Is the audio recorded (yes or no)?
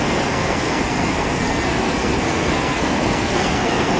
no